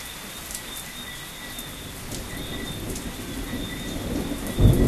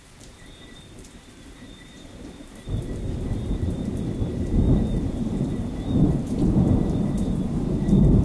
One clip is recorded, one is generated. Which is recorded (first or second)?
first